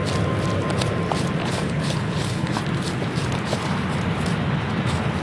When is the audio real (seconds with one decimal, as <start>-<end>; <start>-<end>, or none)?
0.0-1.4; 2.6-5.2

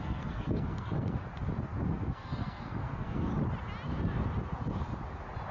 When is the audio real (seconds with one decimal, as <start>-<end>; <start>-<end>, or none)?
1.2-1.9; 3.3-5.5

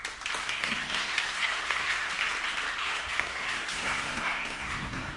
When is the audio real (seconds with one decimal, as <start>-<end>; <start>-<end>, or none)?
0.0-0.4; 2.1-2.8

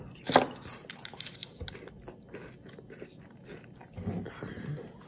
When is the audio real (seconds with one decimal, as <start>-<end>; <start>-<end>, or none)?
0.0-5.1